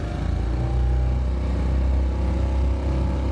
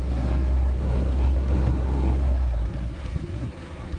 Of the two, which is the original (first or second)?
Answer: first